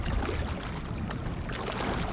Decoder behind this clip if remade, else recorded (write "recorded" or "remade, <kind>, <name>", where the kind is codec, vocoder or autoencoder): recorded